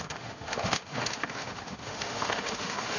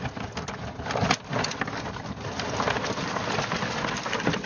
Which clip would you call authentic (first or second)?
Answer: second